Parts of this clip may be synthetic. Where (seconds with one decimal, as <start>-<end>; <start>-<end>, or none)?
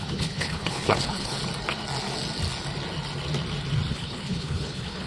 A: 0.0-1.4; 3.9-5.1